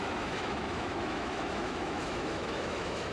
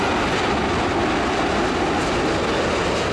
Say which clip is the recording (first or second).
second